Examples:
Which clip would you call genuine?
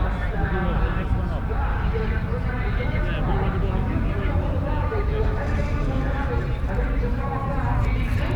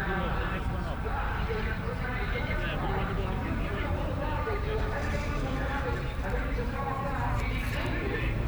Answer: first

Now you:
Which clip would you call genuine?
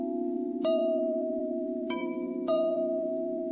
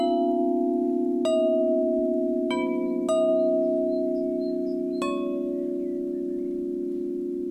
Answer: second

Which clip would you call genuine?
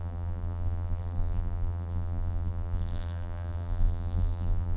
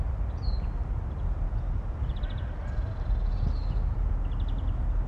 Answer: second